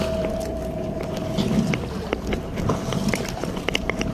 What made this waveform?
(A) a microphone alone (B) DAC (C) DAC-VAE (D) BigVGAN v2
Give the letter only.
A